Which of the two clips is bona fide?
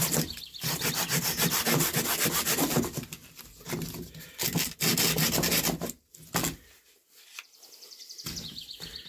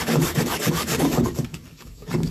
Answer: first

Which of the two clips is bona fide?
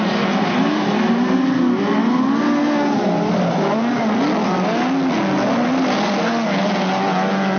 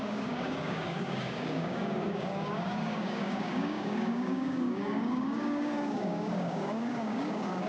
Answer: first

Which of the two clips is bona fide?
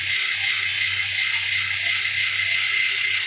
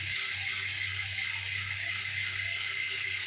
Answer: first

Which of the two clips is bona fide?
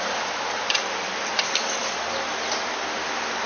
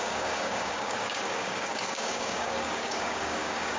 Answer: first